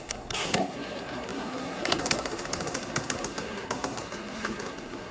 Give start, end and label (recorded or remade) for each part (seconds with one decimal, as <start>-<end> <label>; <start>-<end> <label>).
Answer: 0.0-5.1 remade